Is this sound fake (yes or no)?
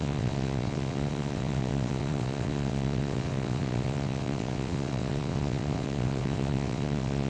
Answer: yes